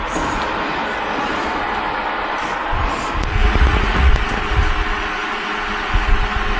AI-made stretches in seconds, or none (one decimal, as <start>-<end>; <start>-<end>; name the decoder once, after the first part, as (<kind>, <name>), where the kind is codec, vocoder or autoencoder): 3.4-4.1 (vocoder, Vocos)